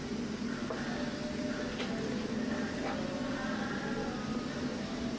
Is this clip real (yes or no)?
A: yes